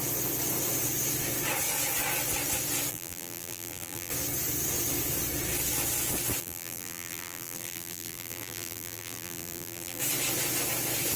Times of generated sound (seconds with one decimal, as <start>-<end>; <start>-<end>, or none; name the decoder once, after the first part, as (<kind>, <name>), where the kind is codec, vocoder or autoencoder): 2.9-4.1 (vocoder, BigVGAN v2); 6.4-10.0